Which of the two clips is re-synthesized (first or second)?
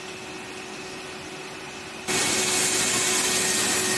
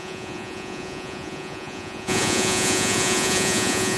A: second